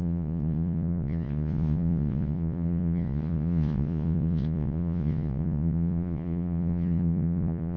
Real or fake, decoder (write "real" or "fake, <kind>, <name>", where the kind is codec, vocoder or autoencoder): fake, vocoder, Vocos